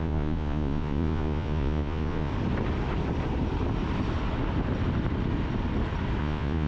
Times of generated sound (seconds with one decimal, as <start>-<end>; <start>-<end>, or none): 0.0-2.3; 6.2-6.7